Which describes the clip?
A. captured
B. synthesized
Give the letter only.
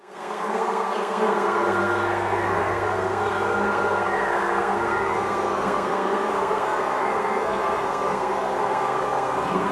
B